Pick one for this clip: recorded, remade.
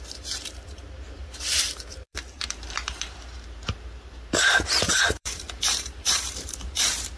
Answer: remade